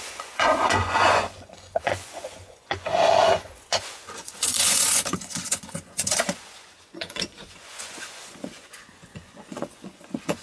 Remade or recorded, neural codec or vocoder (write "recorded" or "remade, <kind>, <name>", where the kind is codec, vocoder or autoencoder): remade, vocoder, Vocos